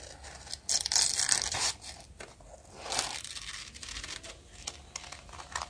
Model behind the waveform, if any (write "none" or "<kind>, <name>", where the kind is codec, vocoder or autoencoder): none